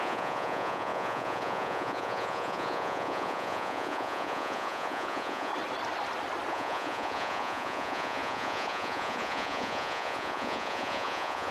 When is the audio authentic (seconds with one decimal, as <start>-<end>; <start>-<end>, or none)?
5.5-6.5